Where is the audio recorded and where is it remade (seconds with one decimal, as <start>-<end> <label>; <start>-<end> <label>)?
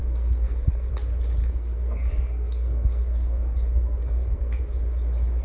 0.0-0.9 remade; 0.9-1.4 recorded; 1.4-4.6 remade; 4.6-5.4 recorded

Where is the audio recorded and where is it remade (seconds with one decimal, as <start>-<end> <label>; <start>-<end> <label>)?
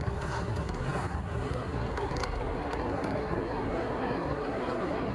0.0-5.1 remade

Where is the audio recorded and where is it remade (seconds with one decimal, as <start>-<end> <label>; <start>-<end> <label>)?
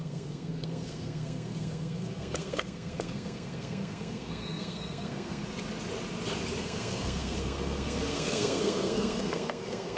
0.0-5.4 remade; 5.4-6.6 recorded; 6.6-10.0 remade